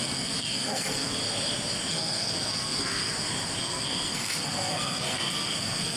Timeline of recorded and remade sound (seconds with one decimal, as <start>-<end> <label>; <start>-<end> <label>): 0.0-1.2 remade; 1.2-1.9 recorded; 1.9-3.1 remade; 3.1-3.6 recorded; 3.6-6.0 remade